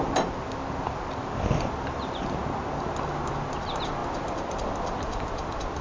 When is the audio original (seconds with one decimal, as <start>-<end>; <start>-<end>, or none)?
0.0-5.8